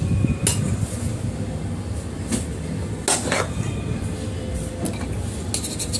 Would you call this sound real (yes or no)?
yes